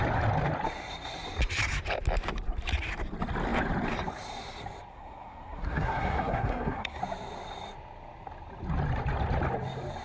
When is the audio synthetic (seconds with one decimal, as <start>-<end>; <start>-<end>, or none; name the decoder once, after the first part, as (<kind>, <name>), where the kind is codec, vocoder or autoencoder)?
4.9-7.0 (codec, SNAC)